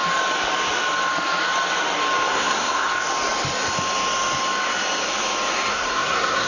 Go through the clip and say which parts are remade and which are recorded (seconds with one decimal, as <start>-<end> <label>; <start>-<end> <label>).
0.0-2.3 recorded; 2.3-2.9 remade; 2.9-5.7 recorded; 5.7-6.5 remade